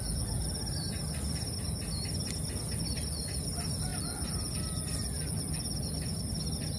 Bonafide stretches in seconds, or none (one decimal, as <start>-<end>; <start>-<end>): 0.0-6.8